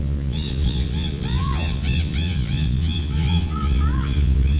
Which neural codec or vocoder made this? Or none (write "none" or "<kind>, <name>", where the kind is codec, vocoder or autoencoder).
vocoder, Vocos